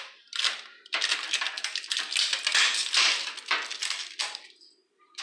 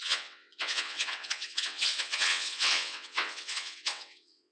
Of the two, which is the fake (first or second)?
second